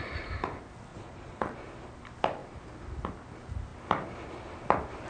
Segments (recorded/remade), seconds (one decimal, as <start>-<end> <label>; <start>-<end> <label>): 0.0-0.9 recorded; 0.9-1.5 remade; 1.5-5.1 recorded